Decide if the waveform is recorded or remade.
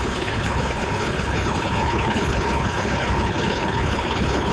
remade